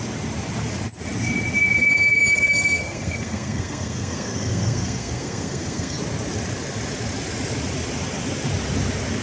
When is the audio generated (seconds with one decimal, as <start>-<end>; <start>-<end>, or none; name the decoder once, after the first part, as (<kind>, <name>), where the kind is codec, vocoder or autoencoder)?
2.3-6.0 (codec, SNAC)